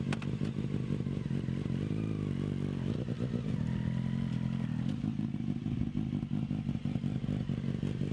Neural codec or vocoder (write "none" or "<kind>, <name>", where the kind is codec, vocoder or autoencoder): none